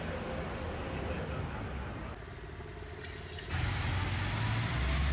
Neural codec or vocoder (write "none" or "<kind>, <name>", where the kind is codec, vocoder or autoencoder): none